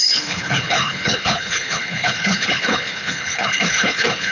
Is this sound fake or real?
fake